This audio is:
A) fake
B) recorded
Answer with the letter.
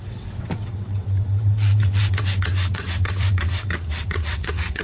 A